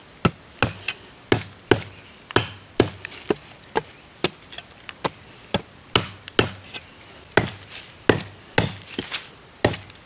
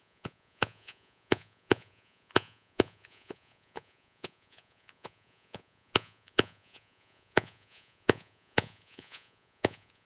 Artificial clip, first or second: second